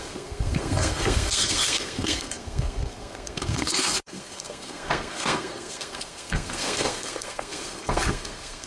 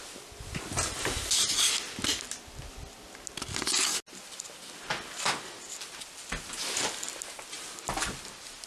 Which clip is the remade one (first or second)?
first